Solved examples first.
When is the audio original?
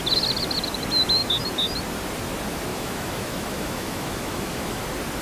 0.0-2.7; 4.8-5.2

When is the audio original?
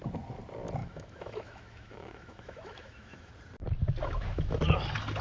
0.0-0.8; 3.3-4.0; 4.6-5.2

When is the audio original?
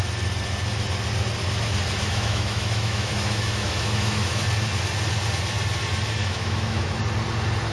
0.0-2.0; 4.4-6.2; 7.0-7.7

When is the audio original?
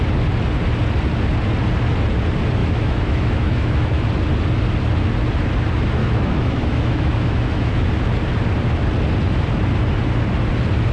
0.0-2.6; 4.0-6.0; 7.9-10.9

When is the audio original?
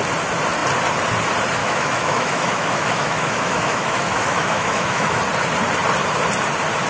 0.0-1.6; 5.2-6.9